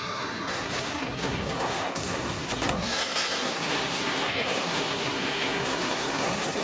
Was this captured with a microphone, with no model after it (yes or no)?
no